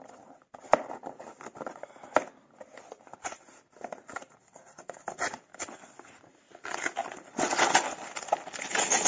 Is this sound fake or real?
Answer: real